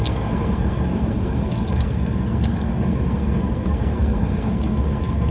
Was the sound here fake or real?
fake